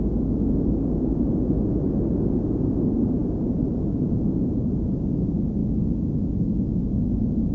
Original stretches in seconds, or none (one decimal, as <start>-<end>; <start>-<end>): 0.0-7.5